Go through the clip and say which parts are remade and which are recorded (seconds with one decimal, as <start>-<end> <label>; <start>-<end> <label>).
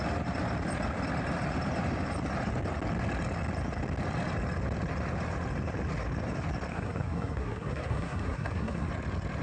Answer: 0.0-6.7 recorded; 6.7-8.9 remade; 8.9-9.4 recorded